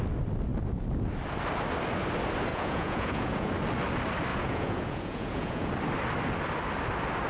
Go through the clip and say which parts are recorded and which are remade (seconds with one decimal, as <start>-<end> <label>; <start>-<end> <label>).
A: 0.0-2.5 recorded; 2.5-3.5 remade; 3.5-4.3 recorded; 4.3-5.7 remade; 5.7-7.3 recorded